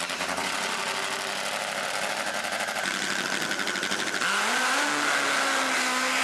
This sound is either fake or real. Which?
real